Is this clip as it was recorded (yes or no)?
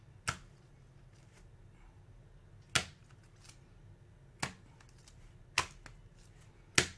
yes